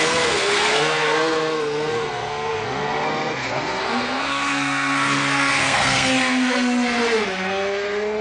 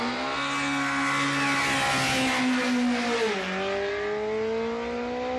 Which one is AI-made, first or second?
first